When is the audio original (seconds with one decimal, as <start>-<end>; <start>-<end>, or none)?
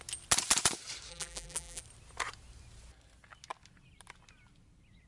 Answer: 0.0-1.1; 1.8-5.1